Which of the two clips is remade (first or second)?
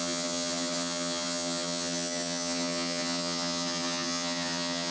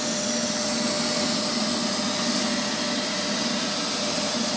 first